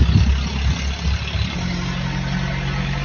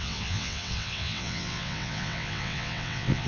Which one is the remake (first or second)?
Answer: second